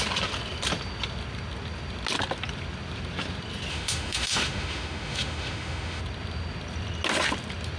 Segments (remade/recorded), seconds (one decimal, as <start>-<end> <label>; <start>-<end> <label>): 0.0-3.7 recorded; 3.7-6.0 remade; 6.0-7.8 recorded